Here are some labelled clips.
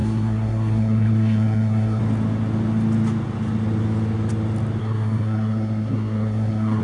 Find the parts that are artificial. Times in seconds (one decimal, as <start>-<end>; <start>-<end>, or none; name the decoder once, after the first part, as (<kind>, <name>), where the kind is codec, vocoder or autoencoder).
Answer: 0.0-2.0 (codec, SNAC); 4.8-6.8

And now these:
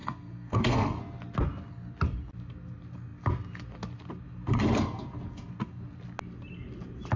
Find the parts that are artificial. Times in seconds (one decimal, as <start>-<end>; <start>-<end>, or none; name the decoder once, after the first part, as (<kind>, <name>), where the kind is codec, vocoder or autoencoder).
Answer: 0.0-1.0 (codec, SNAC)

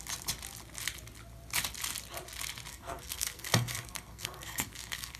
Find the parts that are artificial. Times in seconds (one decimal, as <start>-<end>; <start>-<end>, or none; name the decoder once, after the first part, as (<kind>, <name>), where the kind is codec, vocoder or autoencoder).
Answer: 2.7-5.2 (codec, SNAC)

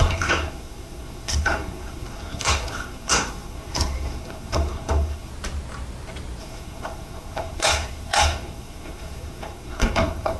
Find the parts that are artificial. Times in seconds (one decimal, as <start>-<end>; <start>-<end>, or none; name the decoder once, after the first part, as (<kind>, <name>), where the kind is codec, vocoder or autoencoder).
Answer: 0.0-5.3 (codec, SNAC); 6.4-10.4

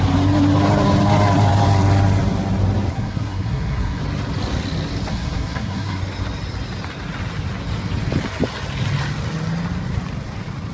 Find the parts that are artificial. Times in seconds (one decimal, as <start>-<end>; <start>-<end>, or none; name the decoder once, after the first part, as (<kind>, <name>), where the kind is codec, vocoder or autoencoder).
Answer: 2.9-4.0 (codec, SNAC); 5.1-6.0

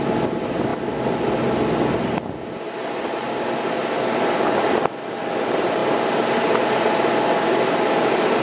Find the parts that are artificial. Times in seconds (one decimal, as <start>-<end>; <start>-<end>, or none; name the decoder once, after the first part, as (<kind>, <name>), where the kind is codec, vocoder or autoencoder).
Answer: none

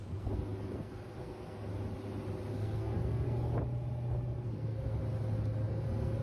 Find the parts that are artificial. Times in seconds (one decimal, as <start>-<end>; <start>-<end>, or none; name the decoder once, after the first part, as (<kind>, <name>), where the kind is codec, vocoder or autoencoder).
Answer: 0.0-1.7 (codec, SNAC); 2.5-3.5; 4.4-5.0; 5.7-6.2

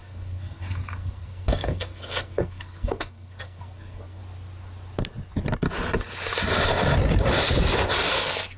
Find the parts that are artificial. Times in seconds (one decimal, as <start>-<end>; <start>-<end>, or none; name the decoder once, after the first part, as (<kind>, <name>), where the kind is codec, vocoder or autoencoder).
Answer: 0.0-4.2 (codec, SNAC); 8.1-8.6